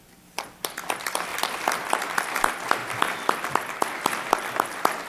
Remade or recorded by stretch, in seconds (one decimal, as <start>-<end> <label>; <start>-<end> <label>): 0.0-5.1 recorded